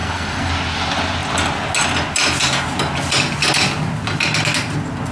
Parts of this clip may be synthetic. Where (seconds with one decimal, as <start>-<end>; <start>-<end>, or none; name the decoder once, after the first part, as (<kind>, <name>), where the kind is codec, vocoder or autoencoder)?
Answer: 0.0-0.5 (codec, SNAC)